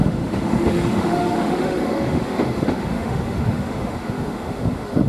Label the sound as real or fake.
fake